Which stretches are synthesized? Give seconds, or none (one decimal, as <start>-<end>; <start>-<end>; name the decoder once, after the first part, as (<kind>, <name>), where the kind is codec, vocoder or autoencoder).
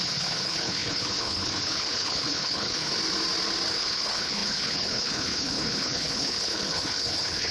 0.0-2.9 (codec, HILCodec); 3.7-7.5